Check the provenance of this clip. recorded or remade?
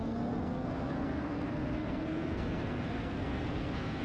remade